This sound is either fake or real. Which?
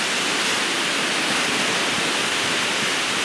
real